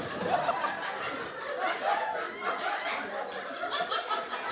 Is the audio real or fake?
real